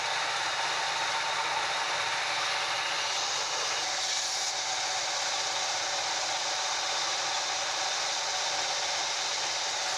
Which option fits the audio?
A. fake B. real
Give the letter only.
B